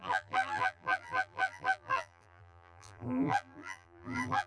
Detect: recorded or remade remade